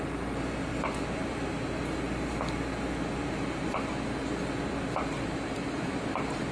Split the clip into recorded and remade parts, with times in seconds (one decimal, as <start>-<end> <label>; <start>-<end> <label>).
0.0-6.5 recorded

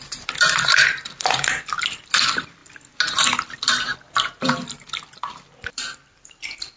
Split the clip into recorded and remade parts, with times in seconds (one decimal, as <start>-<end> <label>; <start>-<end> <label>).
0.0-2.6 remade; 2.6-3.1 recorded; 3.1-6.8 remade

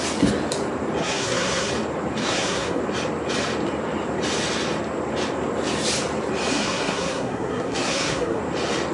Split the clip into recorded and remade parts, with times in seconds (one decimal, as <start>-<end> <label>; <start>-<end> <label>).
0.0-1.0 recorded; 1.0-1.7 remade; 1.7-2.2 recorded; 2.2-2.8 remade; 2.8-6.5 recorded; 6.5-8.4 remade; 8.4-8.9 recorded

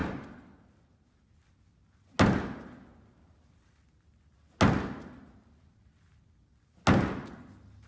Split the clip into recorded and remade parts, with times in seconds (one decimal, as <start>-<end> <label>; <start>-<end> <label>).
0.0-7.9 recorded

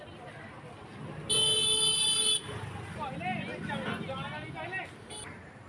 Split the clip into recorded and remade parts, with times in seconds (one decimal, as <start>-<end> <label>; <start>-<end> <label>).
0.0-5.7 recorded

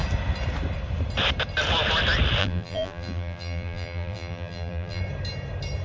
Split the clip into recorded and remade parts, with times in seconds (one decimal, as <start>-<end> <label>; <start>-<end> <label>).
0.0-2.4 recorded; 2.4-5.0 remade; 5.0-5.8 recorded

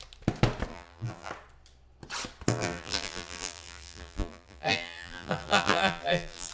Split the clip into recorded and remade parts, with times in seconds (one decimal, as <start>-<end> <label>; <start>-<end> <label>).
0.0-0.7 recorded; 0.7-1.3 remade; 1.3-2.5 recorded; 2.5-6.5 remade

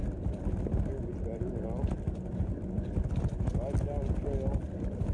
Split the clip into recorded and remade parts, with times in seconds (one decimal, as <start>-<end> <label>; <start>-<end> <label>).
0.0-5.1 recorded